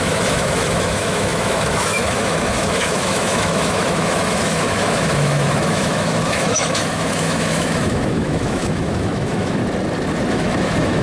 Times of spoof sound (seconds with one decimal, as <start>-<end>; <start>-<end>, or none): 0.0-9.6; 10.3-11.0